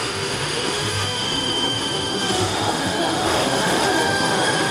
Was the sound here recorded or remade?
remade